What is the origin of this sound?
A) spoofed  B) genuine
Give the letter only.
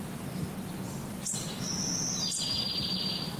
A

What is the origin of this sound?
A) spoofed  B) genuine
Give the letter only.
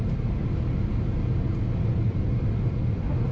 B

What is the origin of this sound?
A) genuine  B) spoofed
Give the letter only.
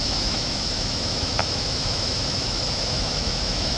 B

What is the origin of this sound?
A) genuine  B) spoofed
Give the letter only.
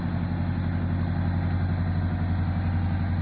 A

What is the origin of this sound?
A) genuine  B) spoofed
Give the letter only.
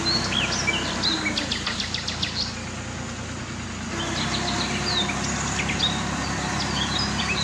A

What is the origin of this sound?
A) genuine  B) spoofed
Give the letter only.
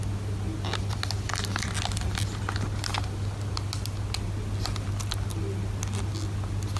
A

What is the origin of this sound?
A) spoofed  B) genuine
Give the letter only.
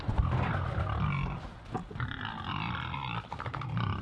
B